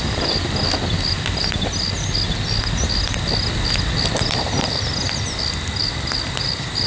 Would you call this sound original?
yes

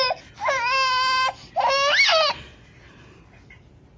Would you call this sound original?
yes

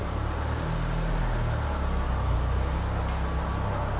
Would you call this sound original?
yes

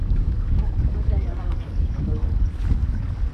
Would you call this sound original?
no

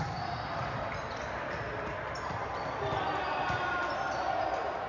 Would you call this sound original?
yes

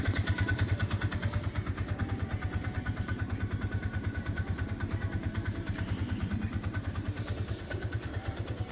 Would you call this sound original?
no